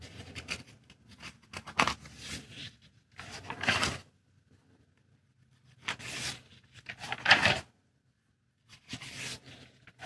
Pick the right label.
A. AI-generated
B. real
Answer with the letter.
B